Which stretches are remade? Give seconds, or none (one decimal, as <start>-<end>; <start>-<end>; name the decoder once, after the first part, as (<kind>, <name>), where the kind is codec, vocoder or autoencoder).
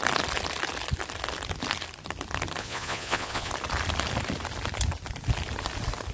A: 2.6-3.5 (vocoder, Vocos)